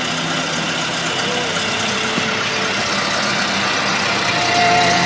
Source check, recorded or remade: recorded